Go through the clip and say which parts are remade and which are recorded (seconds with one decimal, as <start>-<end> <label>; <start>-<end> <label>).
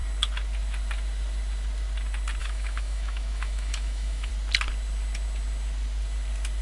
0.0-2.4 recorded; 2.4-4.3 remade; 4.3-6.6 recorded